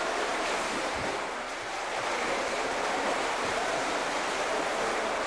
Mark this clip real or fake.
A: real